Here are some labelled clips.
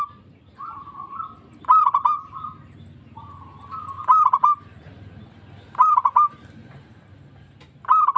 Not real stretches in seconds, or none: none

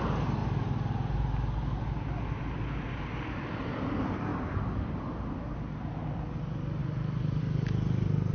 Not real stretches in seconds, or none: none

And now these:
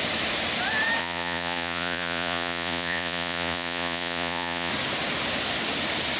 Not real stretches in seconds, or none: 1.0-4.7 (vocoder, Vocos)